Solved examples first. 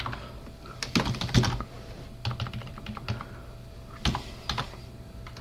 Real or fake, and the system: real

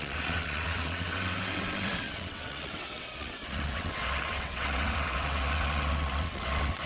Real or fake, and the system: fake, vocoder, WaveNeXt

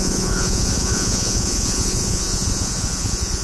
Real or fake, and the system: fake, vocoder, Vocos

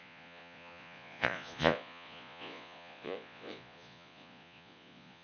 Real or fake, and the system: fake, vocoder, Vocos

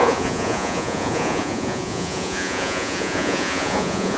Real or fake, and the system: fake, vocoder, Vocos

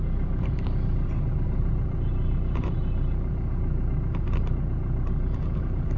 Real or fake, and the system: fake, vocoder, BigVGAN v2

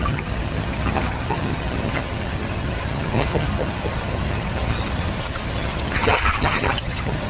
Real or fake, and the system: fake, vocoder, HiFi-GAN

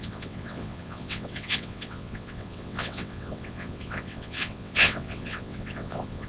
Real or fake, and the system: fake, vocoder, WaveNeXt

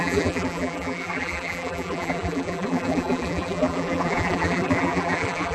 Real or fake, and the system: fake, vocoder, BigVGAN v2